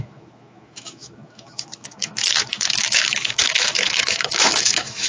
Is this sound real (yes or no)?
no